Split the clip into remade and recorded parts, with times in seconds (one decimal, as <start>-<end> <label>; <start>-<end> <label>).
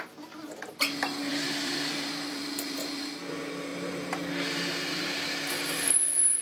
0.0-1.3 recorded; 1.3-3.2 remade; 3.2-6.4 recorded